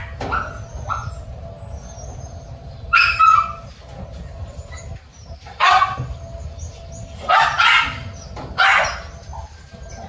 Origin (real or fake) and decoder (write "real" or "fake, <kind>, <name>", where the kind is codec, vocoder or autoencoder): real